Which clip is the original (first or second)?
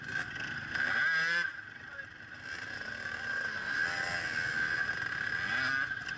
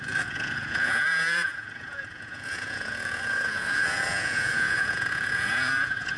first